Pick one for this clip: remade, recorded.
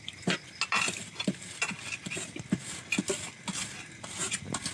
recorded